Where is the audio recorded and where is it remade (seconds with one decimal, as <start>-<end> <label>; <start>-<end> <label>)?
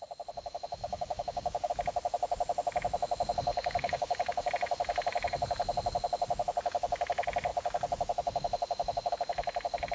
0.0-0.8 recorded; 0.8-1.7 remade; 1.7-3.5 recorded; 3.5-4.5 remade; 4.5-9.9 recorded